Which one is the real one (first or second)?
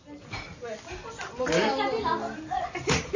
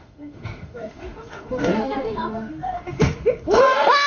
first